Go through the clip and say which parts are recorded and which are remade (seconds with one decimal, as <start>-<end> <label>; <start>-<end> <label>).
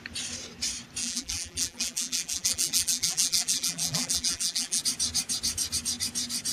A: 0.0-1.0 recorded; 1.0-4.8 remade; 4.8-6.5 recorded